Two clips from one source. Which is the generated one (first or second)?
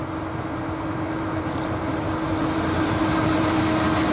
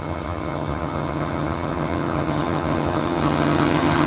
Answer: second